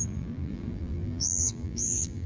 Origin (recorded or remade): remade